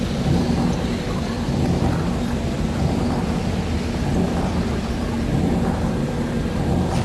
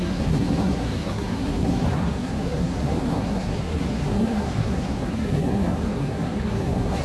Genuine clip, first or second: first